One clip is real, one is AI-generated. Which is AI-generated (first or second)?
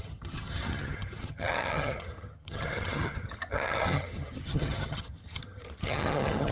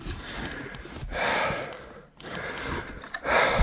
first